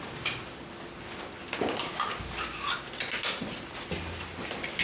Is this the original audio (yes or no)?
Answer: yes